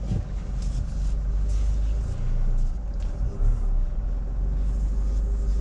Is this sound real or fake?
real